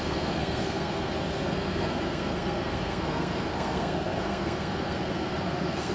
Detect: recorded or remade remade